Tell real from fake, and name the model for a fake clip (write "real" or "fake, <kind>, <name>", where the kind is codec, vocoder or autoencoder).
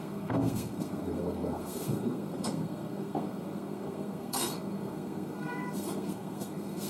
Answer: fake, codec, SNAC